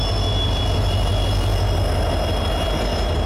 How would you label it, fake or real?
real